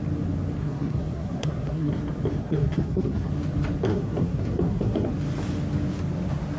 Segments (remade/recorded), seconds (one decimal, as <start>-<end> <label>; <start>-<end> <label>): 0.0-0.6 recorded; 0.6-1.9 remade; 1.9-2.4 recorded; 2.4-3.3 remade; 3.3-3.9 recorded; 3.9-5.1 remade; 5.1-6.6 recorded